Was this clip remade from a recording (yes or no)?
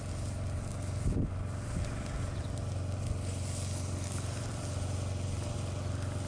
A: no